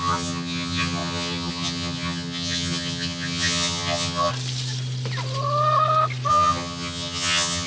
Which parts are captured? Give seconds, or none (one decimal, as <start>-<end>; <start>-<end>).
4.3-6.3